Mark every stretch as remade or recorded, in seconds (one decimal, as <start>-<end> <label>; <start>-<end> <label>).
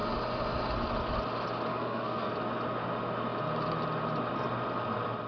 0.0-1.7 recorded; 1.7-2.3 remade; 2.3-5.3 recorded